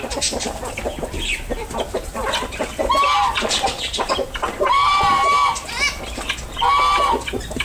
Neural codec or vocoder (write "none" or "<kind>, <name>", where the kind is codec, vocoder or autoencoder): none